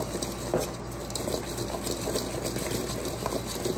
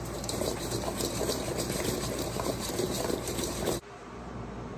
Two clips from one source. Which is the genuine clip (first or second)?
first